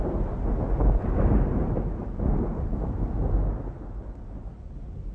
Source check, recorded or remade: recorded